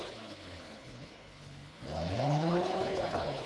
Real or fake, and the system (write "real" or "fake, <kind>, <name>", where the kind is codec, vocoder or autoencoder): fake, codec, HILCodec